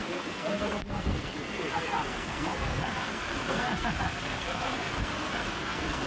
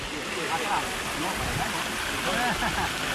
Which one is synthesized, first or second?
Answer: first